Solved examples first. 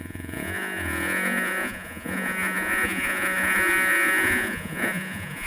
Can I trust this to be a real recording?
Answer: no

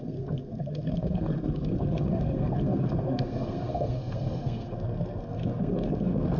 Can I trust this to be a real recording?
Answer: no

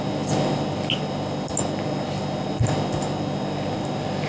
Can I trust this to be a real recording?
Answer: yes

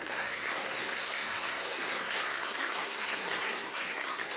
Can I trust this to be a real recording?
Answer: no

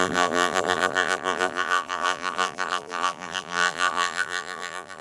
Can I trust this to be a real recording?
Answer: no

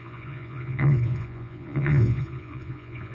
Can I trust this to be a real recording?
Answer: no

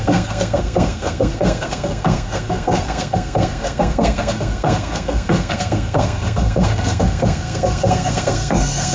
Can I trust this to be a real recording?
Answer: no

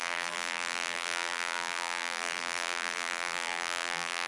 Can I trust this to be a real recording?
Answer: no